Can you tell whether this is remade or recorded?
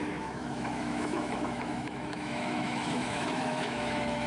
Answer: remade